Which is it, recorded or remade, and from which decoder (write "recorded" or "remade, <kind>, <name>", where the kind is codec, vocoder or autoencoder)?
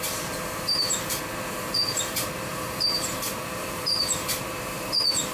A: remade, vocoder, BigVGAN v2